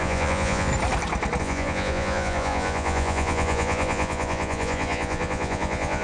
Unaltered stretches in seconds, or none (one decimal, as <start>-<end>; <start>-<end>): 0.7-1.4